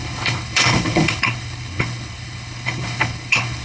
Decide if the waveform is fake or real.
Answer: fake